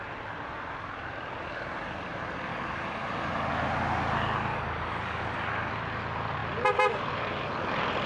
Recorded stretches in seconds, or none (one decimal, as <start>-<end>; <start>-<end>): 0.0-2.5; 3.3-4.5; 5.7-8.1